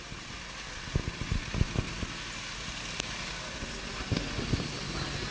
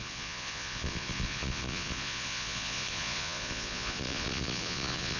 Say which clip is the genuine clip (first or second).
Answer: first